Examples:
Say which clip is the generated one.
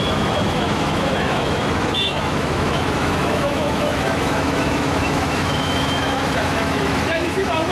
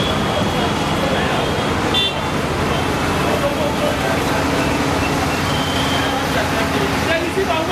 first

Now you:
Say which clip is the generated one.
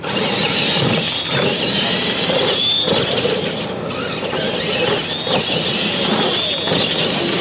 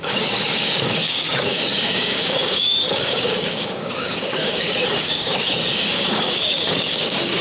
second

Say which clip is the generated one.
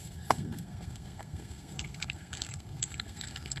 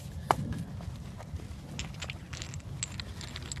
first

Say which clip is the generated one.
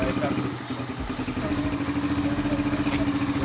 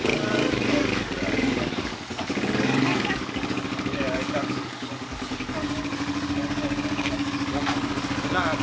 second